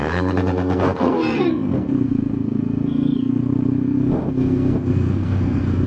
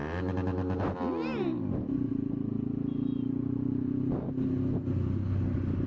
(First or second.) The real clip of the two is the second